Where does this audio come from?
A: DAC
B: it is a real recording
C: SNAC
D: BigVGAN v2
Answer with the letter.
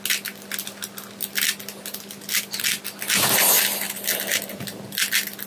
B